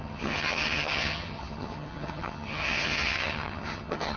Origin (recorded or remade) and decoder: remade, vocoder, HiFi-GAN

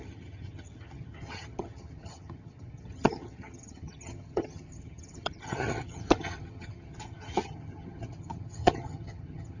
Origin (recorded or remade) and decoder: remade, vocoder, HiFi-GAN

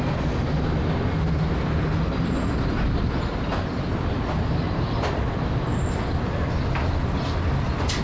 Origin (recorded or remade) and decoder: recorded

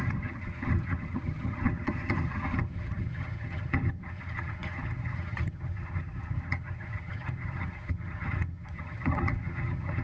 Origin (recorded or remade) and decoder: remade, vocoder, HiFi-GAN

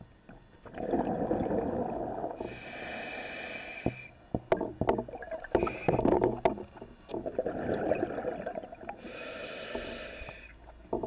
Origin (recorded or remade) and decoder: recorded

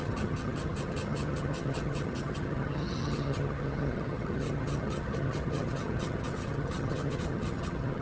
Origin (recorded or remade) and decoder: remade, vocoder, HiFi-GAN